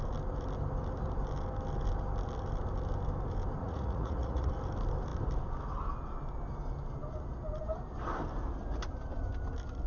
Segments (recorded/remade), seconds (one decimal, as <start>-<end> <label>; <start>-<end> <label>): 0.0-3.6 recorded; 3.6-4.5 remade; 4.5-9.9 recorded